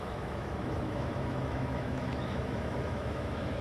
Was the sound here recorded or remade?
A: remade